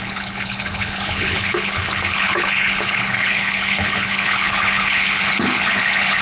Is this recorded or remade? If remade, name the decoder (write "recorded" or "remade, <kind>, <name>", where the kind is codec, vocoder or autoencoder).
remade, codec, HILCodec